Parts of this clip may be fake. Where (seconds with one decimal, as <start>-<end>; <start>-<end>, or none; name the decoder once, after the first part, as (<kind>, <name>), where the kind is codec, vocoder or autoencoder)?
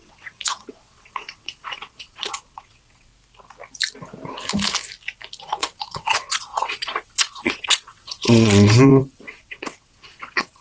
0.0-3.1 (vocoder, WaveNeXt); 5.4-10.6